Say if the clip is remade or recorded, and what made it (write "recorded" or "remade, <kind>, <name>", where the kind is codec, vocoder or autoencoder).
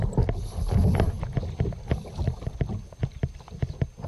recorded